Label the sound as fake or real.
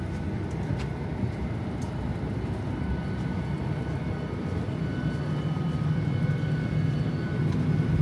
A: real